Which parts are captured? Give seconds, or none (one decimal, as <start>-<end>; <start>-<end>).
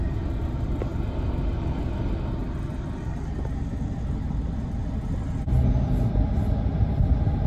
0.0-7.5